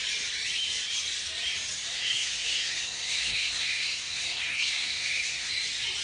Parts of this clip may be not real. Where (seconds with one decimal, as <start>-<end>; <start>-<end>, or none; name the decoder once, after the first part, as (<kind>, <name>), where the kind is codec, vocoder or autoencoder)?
1.9-5.5 (codec, SNAC)